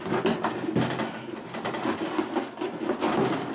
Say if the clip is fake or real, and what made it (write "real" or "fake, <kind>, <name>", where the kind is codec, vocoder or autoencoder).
real